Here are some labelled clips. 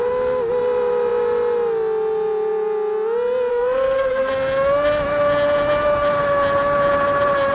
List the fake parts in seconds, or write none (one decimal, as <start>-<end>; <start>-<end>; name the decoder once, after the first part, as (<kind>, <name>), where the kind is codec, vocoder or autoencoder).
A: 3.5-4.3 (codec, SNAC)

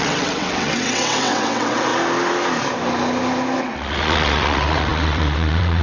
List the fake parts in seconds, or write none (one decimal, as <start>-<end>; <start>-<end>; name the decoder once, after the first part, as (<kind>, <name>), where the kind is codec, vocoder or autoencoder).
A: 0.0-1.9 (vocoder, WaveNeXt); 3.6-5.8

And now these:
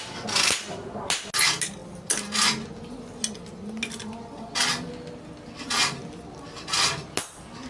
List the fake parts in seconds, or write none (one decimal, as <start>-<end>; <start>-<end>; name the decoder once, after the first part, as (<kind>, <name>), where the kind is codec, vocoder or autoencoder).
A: none